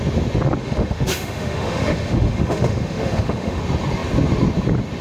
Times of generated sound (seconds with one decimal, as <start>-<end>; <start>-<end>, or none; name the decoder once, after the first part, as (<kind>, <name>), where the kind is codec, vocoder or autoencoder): 0.6-3.6 (autoencoder, DAC-VAE)